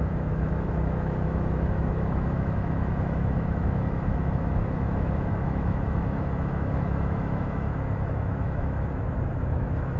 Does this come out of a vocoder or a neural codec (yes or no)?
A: yes